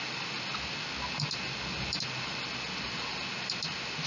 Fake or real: real